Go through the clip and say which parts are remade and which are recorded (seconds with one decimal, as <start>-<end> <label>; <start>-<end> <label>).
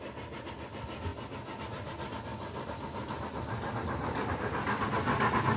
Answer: 0.0-5.6 recorded